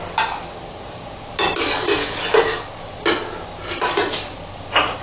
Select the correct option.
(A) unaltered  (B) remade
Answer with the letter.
A